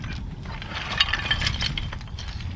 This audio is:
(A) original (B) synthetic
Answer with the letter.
A